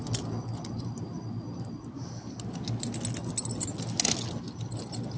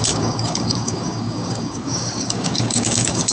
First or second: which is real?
first